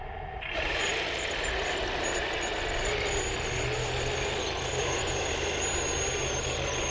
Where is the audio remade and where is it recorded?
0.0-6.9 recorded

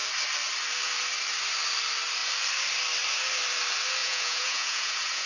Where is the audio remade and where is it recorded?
0.0-4.0 recorded; 4.0-5.3 remade

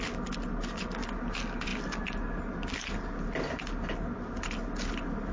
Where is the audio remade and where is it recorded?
0.0-5.3 recorded

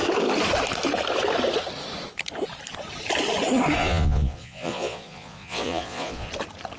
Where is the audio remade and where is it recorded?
0.0-3.8 recorded; 3.8-6.3 remade; 6.3-6.8 recorded

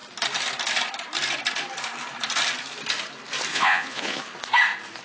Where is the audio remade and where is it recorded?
0.0-3.5 recorded; 3.5-4.2 remade; 4.2-5.0 recorded

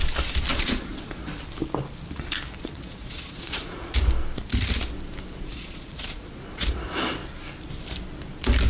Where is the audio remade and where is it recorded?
0.0-0.6 recorded; 0.6-1.2 remade; 1.2-2.6 recorded; 2.6-3.9 remade; 3.9-5.4 recorded; 5.4-7.2 remade; 7.2-8.7 recorded

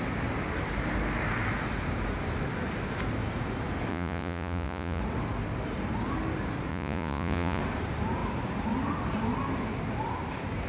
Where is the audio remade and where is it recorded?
0.0-3.9 recorded; 3.9-5.0 remade; 5.0-6.7 recorded; 6.7-7.6 remade; 7.6-10.7 recorded